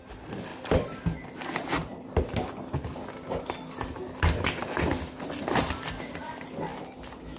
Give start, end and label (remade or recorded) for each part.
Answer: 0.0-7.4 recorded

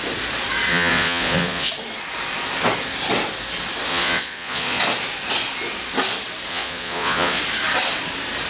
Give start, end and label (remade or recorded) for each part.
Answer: 0.0-0.7 recorded; 0.7-1.7 remade; 1.7-3.9 recorded; 3.9-4.8 remade; 4.8-6.5 recorded; 6.5-7.4 remade; 7.4-8.5 recorded

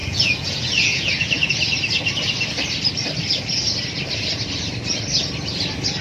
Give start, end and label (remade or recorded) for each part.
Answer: 0.0-1.5 remade; 1.5-6.0 recorded

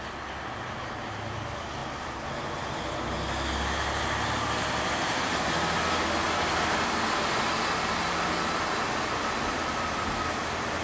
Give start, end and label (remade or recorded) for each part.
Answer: 0.0-10.8 recorded

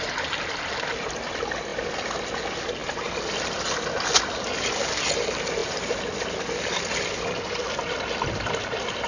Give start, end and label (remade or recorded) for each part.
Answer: 0.0-9.1 recorded

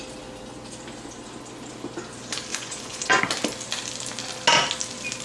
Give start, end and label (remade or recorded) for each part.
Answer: 0.0-2.5 recorded; 2.5-3.2 remade; 3.2-5.2 recorded